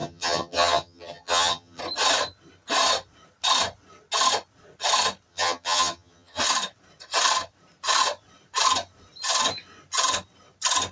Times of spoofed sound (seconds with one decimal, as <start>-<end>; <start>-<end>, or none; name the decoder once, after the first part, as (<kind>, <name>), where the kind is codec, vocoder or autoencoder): 0.0-1.8 (vocoder, HiFi-GAN); 5.3-6.4